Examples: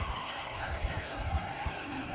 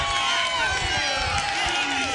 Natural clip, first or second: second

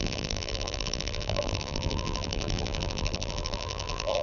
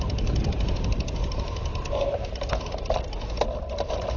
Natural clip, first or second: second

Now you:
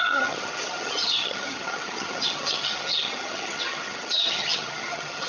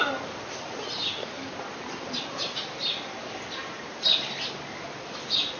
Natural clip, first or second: second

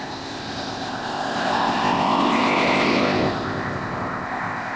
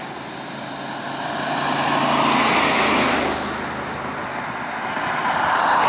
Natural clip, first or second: second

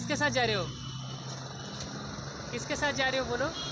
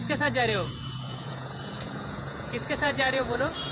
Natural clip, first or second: first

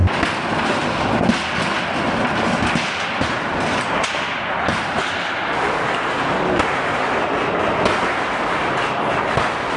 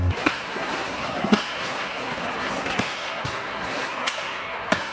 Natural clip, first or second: first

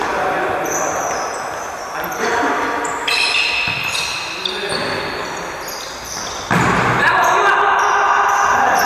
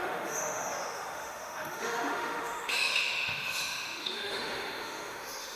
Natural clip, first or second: first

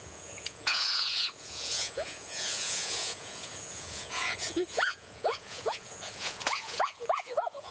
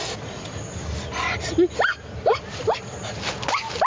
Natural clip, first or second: second